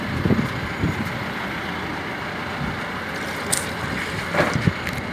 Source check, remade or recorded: recorded